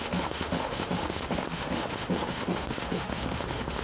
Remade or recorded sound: remade